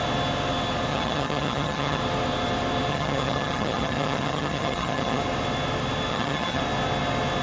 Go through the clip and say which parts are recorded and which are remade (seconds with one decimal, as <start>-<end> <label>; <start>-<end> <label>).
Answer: 0.0-0.9 recorded; 0.9-2.0 remade; 2.0-2.9 recorded; 2.9-5.2 remade; 5.2-6.1 recorded; 6.1-6.6 remade; 6.6-7.4 recorded